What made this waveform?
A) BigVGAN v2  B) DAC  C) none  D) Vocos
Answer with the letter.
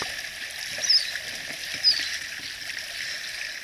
C